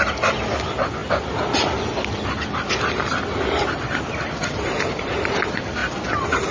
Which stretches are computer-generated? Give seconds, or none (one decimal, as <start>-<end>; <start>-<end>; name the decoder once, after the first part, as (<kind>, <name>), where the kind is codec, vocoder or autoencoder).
none